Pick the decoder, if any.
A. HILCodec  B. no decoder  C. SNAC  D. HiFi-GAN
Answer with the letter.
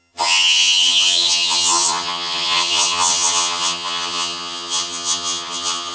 D